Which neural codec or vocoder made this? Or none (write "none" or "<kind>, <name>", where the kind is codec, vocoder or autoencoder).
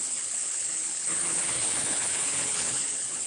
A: codec, HILCodec